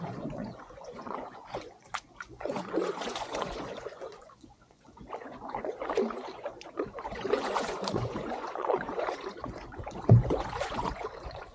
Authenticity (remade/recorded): remade